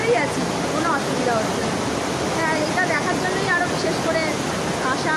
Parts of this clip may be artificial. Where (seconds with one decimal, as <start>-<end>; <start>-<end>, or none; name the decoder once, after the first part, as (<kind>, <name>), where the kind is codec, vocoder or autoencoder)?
none